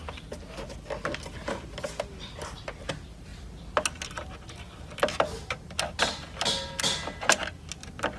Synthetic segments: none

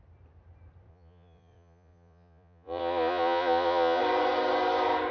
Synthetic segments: 0.9-4.0 (vocoder, Vocos)

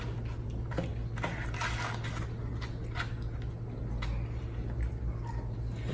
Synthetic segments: none

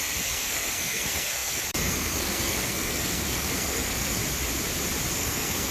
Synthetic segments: 0.0-4.2 (codec, SNAC); 5.1-5.7

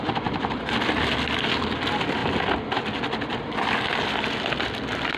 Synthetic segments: none

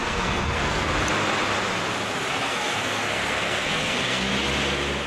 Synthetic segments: 0.0-0.9 (codec, SNAC); 2.3-4.3